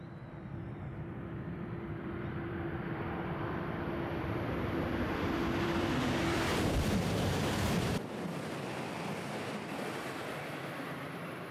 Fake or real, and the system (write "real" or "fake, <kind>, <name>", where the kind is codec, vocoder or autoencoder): fake, vocoder, BigVGAN v2